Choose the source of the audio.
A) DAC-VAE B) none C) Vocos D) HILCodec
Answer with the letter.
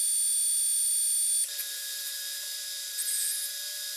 B